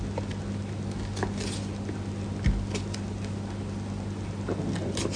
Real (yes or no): yes